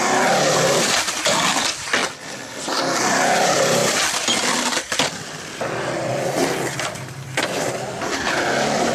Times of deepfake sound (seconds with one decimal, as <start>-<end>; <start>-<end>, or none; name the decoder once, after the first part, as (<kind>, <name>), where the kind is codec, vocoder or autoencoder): none